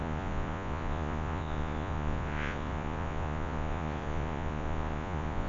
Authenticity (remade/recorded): remade